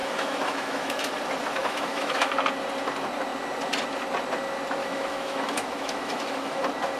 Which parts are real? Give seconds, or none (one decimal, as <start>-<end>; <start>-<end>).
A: 1.1-1.6; 2.3-4.8; 6.6-7.0